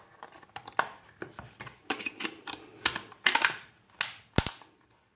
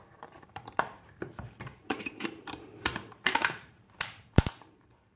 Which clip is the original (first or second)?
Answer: first